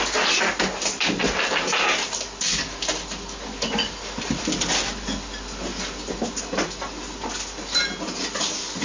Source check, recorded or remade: recorded